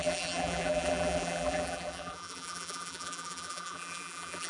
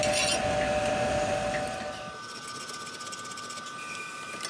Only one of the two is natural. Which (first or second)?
second